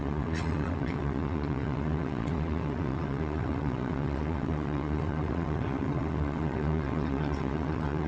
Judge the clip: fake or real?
fake